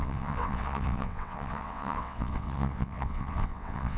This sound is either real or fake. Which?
fake